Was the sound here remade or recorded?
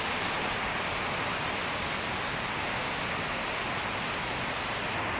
recorded